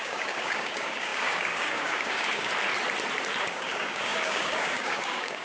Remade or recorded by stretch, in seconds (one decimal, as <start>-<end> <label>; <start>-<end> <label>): 0.0-2.5 remade; 2.5-3.4 recorded; 3.4-5.4 remade